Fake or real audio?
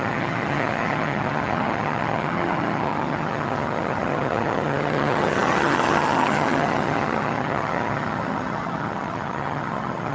fake